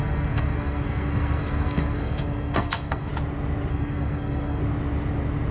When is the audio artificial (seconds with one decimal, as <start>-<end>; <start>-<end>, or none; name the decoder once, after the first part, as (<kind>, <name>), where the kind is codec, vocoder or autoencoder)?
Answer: 0.0-3.1 (codec, SNAC); 3.7-4.6

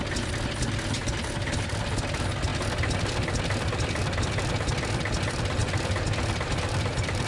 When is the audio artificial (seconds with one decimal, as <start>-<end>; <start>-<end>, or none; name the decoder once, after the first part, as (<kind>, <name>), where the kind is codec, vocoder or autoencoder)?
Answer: none

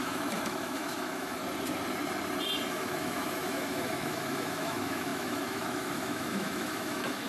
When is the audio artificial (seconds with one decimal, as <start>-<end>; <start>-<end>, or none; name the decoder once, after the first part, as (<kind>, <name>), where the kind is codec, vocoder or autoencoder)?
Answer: 0.0-1.4 (autoencoder, DAC-VAE); 2.7-7.3

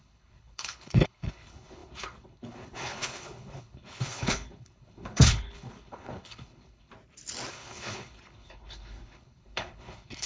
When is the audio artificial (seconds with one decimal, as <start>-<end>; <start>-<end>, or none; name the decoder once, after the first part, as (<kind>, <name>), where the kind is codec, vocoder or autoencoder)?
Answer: 0.0-6.9 (codec, HILCodec); 7.5-10.3

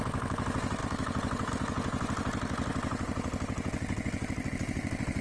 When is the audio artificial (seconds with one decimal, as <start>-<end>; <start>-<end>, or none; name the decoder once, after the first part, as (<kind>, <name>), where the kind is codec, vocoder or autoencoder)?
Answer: none

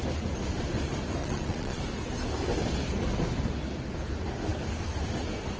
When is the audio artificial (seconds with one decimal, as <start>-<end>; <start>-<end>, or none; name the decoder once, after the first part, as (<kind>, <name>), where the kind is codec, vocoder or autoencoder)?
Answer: 1.2-1.8 (vocoder, Vocos)